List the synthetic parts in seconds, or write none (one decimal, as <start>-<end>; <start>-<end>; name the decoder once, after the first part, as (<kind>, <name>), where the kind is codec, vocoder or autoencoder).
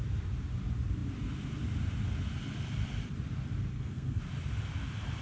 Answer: 3.7-4.2 (codec, SNAC)